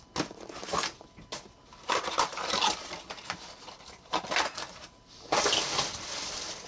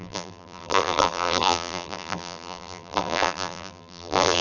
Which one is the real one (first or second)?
first